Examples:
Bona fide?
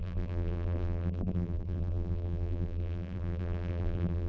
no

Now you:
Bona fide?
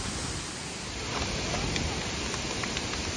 yes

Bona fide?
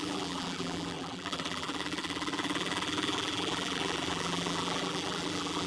no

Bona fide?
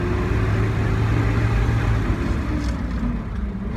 yes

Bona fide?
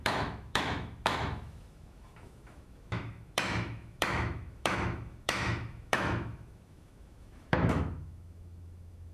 no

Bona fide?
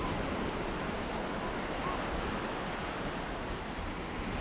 yes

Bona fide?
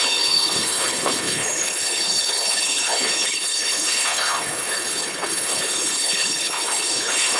no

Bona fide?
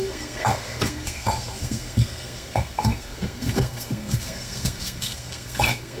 no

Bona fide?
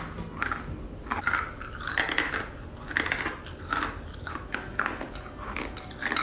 yes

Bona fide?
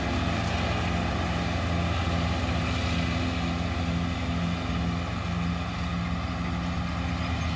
yes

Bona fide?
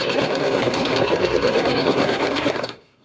no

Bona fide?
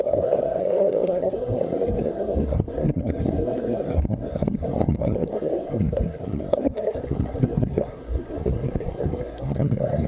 no